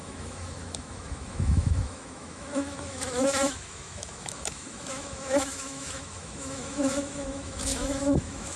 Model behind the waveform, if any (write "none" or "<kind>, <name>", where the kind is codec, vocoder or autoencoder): autoencoder, DAC-VAE